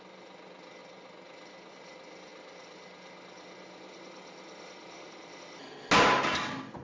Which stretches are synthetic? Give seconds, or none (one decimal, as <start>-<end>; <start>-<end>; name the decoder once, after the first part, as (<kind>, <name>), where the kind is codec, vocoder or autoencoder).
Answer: none

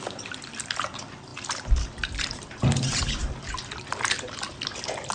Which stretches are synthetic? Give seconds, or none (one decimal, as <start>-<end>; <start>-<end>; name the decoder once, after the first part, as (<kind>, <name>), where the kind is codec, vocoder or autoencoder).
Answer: none

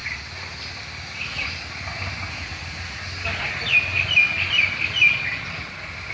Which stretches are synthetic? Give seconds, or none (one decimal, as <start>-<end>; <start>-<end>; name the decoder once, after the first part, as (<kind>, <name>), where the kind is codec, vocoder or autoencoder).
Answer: none

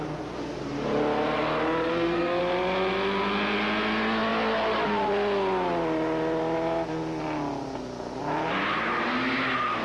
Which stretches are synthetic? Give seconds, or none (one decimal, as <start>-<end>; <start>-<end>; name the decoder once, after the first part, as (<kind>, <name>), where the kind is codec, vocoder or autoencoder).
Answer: 1.9-2.4 (codec, SNAC)

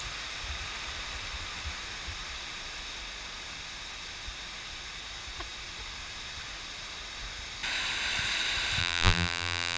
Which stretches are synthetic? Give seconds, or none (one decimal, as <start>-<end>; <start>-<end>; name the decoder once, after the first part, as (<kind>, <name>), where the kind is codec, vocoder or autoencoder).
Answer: 8.8-9.8 (vocoder, BigVGAN v2)

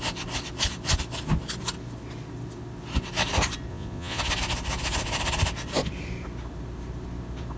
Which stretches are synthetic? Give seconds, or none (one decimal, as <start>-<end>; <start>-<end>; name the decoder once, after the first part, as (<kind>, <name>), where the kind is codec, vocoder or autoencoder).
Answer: 3.7-4.2 (vocoder, Vocos)